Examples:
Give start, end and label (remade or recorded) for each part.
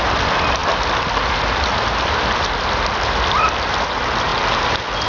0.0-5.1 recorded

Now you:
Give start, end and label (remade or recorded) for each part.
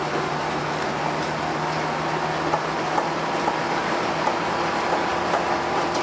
0.0-6.0 recorded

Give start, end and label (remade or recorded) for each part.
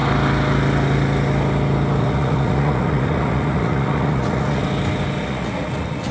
0.0-2.0 recorded; 2.0-4.6 remade; 4.6-5.2 recorded; 5.2-6.1 remade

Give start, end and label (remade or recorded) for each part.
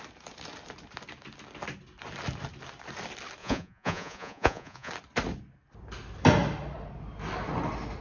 0.0-3.4 recorded; 3.4-4.9 remade; 4.9-8.0 recorded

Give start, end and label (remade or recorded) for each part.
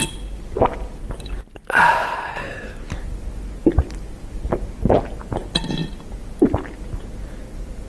0.0-7.9 recorded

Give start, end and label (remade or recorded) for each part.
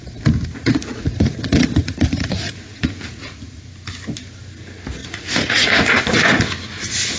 0.0-0.5 recorded; 0.5-3.6 remade; 3.6-5.0 recorded; 5.0-6.0 remade; 6.0-7.2 recorded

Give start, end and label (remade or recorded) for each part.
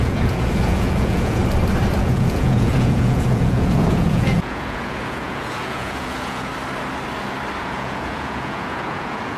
0.0-1.4 remade; 1.4-2.0 recorded; 2.0-6.5 remade; 6.5-7.6 recorded; 7.6-9.4 remade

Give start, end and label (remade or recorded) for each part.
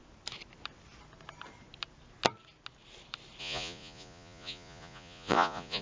0.0-3.4 recorded; 3.4-5.8 remade